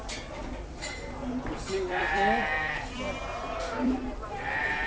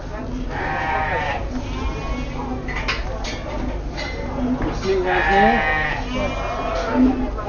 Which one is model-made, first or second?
first